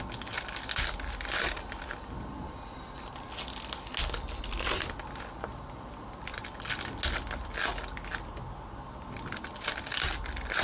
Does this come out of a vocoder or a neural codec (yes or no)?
no